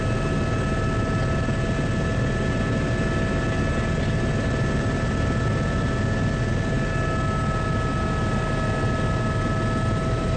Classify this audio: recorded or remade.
recorded